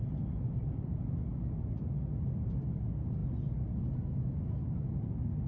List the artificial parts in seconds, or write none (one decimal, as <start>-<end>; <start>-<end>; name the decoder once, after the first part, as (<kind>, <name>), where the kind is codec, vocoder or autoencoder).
none